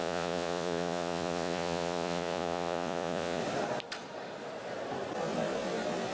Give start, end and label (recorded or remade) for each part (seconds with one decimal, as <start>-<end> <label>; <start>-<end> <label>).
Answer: 0.0-3.4 remade; 3.4-6.1 recorded